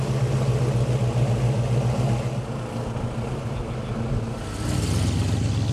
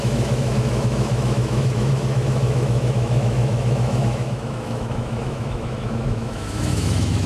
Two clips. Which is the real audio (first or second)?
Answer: first